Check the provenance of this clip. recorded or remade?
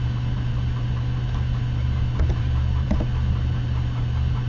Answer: recorded